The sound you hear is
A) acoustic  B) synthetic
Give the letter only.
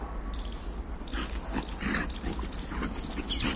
A